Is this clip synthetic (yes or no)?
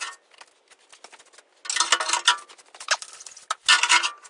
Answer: no